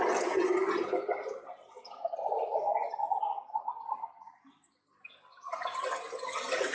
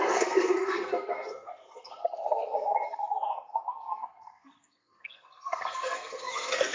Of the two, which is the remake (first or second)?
second